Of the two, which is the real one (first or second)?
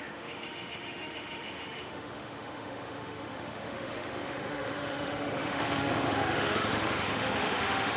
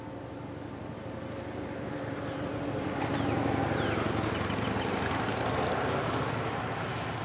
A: second